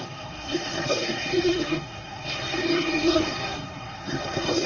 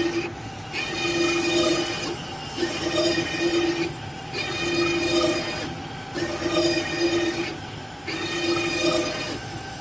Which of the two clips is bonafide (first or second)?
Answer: second